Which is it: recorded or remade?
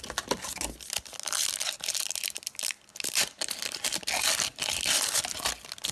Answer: recorded